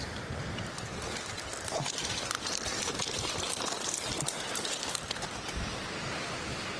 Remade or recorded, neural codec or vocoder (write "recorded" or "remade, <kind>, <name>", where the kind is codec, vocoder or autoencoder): remade, vocoder, BigVGAN v2